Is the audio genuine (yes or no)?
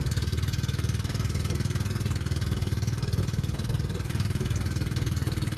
no